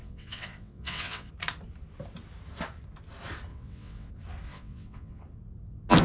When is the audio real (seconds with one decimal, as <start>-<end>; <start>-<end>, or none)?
1.3-3.5; 4.1-4.5; 5.2-6.0